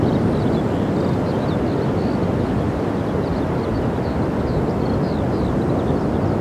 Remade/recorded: recorded